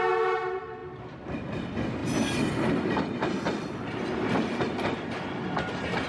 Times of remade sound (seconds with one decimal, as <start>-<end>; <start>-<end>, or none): none